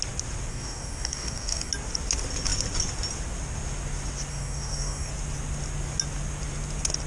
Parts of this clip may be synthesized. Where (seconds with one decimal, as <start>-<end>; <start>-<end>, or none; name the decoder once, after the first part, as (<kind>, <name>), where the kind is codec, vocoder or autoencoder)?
0.5-1.7 (codec, DAC); 4.3-5.1